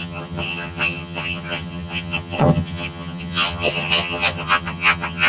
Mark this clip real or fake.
fake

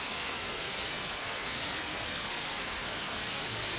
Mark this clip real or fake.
fake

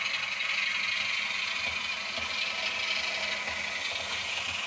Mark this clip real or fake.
real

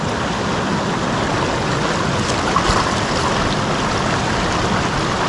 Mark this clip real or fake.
real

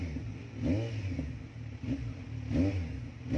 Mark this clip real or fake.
real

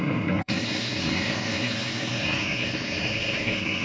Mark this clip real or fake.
fake